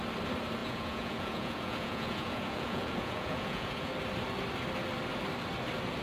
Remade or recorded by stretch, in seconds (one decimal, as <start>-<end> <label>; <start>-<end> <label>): 0.0-0.6 recorded; 0.6-3.9 remade; 3.9-6.0 recorded